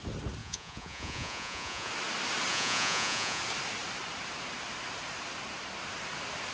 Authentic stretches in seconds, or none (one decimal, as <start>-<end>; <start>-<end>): 0.0-0.4; 1.9-2.5; 3.4-6.5